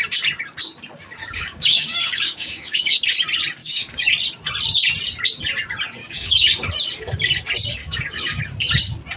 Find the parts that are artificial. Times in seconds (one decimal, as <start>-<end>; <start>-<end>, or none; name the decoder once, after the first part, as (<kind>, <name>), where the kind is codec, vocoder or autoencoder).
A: 1.2-3.0 (codec, DAC); 3.6-4.1; 6.0-6.7; 7.8-8.4